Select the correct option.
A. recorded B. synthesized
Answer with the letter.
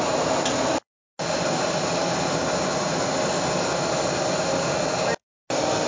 A